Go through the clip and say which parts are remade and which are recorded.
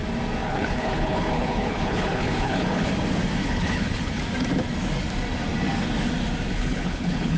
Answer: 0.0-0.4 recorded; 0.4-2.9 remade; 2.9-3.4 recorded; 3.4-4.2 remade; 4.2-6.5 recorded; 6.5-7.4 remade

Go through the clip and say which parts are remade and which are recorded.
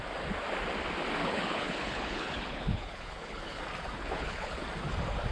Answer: 0.0-1.2 recorded; 1.2-3.6 remade; 3.6-4.0 recorded; 4.0-4.6 remade; 4.6-5.3 recorded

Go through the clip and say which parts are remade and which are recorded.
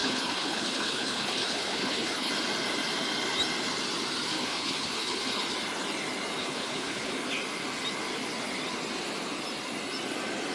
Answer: 0.0-2.3 remade; 2.3-4.3 recorded; 4.3-5.5 remade; 5.5-6.4 recorded; 6.4-7.1 remade; 7.1-10.5 recorded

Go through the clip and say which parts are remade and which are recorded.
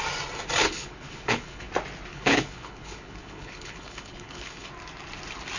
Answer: 0.0-0.6 recorded; 0.6-1.7 remade; 1.7-2.1 recorded; 2.1-4.7 remade; 4.7-5.6 recorded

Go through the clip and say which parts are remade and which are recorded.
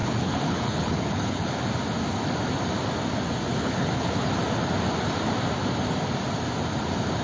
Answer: 0.0-1.5 remade; 1.5-3.5 recorded; 3.5-4.3 remade; 4.3-7.2 recorded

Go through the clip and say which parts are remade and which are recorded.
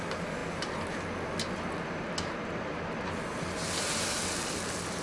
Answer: 0.0-5.0 recorded